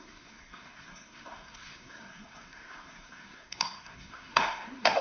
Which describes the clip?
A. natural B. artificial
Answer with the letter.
B